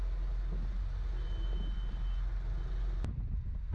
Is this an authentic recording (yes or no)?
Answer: yes